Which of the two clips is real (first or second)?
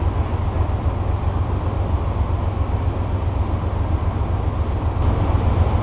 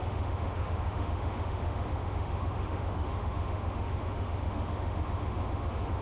first